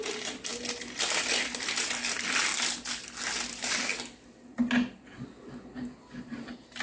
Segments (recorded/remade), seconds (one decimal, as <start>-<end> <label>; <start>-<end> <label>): 0.0-0.5 remade; 0.5-1.9 recorded; 1.9-2.5 remade; 2.5-3.3 recorded; 3.3-3.9 remade; 3.9-4.9 recorded; 4.9-6.8 remade